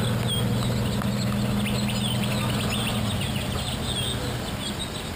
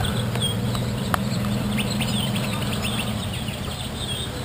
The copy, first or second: second